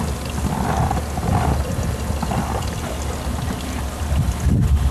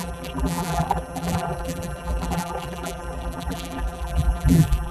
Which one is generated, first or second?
second